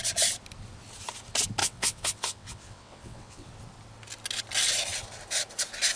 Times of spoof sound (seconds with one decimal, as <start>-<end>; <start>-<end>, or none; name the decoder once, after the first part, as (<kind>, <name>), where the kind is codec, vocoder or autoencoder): 1.6-3.5 (vocoder, WaveNeXt)